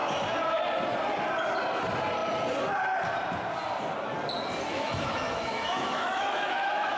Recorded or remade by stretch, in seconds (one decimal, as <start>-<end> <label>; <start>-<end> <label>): 0.0-4.7 recorded; 4.7-7.0 remade